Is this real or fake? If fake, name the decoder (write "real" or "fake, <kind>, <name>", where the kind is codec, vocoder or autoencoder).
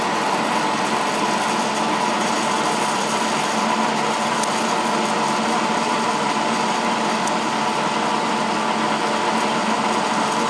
real